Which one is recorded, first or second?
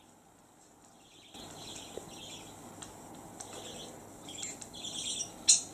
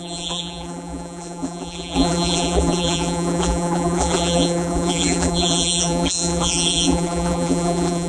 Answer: first